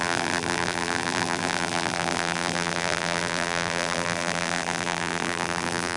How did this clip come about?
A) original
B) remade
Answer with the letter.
B